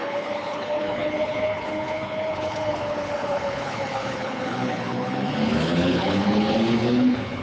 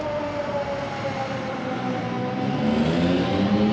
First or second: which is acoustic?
second